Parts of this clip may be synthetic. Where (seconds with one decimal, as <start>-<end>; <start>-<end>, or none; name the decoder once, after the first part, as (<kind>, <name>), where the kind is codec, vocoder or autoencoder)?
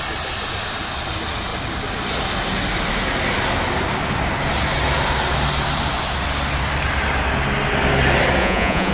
8.4-8.9 (vocoder, Vocos)